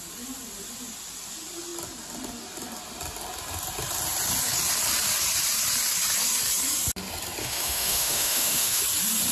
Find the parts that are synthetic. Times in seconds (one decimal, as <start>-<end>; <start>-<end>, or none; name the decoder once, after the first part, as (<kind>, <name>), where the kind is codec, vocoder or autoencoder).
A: 7.4-8.8 (autoencoder, DAC-VAE)